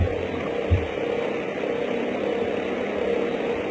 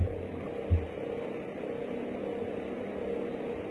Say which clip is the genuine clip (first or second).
second